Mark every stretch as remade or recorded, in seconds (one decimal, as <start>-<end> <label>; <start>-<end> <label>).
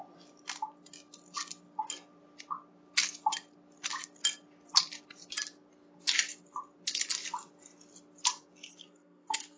0.0-8.7 recorded; 8.7-9.6 remade